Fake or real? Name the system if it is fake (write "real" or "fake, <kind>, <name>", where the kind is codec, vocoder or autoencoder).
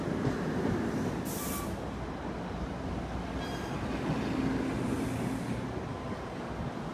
real